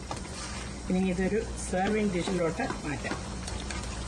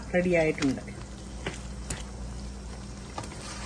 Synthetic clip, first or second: first